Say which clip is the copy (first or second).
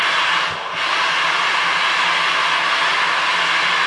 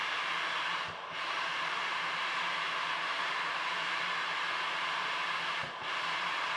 second